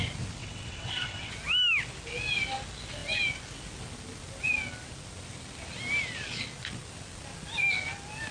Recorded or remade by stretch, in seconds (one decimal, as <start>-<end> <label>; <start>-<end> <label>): 0.0-0.4 recorded; 0.4-1.3 remade; 1.3-8.3 recorded